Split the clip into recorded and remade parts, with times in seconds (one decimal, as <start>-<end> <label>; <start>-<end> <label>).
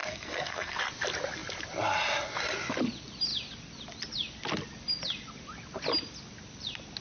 0.0-0.8 remade; 0.8-7.0 recorded